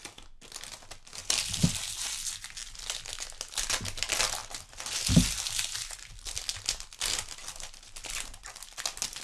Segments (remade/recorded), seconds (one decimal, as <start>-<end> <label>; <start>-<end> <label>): 0.0-9.2 recorded